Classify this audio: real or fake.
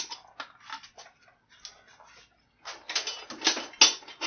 real